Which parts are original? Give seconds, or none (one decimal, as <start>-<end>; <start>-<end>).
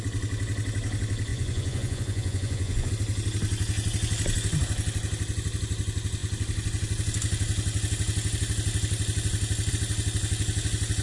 0.0-1.3; 2.9-11.0